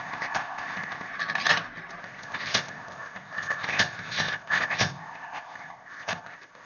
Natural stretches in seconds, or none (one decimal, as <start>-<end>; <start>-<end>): 1.1-2.0